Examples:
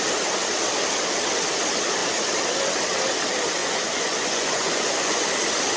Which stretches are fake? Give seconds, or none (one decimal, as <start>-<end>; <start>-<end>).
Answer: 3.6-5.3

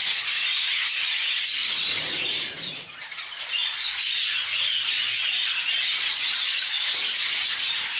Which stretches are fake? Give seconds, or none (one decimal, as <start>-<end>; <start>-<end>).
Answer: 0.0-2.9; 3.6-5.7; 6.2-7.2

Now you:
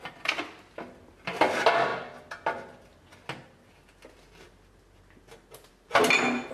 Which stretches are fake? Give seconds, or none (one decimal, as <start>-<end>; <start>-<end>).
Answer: none

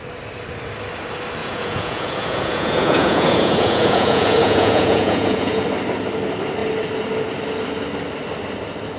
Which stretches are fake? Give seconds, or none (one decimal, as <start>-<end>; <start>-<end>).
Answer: 1.4-5.6

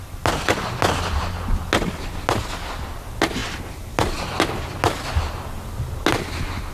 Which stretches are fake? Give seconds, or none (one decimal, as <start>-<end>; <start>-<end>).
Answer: none

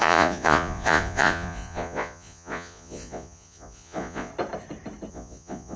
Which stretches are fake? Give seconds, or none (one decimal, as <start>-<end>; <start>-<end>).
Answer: 0.0-4.3; 5.1-5.8

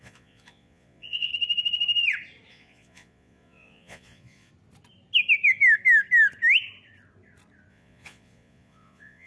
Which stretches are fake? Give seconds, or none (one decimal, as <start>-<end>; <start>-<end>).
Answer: 0.0-1.3; 2.5-4.5; 7.7-9.3